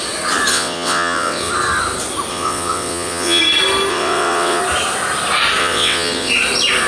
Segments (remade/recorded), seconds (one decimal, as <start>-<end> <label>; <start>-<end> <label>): 0.0-0.5 recorded; 0.5-1.5 remade; 1.5-2.3 recorded; 2.3-3.4 remade; 3.4-3.9 recorded; 3.9-4.6 remade; 4.6-5.6 recorded; 5.6-6.3 remade; 6.3-6.9 recorded